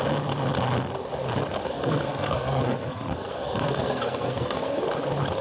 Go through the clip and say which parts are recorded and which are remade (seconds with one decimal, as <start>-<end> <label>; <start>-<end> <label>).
0.0-1.6 recorded; 1.6-4.8 remade; 4.8-5.4 recorded